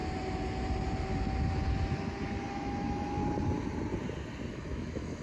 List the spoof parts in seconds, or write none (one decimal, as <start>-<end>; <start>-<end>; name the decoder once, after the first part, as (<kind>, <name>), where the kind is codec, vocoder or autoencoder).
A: 2.5-3.2 (autoencoder, DAC-VAE); 4.5-5.2